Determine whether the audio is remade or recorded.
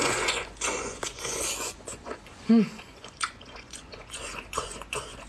remade